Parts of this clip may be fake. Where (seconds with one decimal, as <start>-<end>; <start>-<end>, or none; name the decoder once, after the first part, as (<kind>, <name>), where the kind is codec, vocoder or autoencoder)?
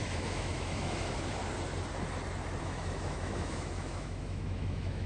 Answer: 0.0-1.4 (autoencoder, DAC-VAE); 2.6-5.1